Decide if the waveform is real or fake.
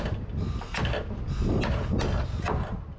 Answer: real